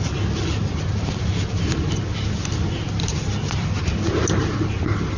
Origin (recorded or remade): recorded